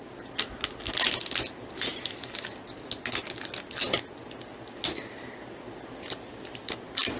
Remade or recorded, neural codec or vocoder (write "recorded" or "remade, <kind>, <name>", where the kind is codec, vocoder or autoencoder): recorded